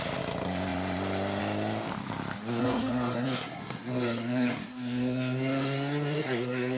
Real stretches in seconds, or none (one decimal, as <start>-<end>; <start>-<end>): 0.0-2.6